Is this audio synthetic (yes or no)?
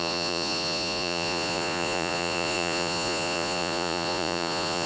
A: yes